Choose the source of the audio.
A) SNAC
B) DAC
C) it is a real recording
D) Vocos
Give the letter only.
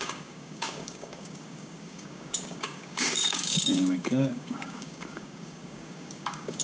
B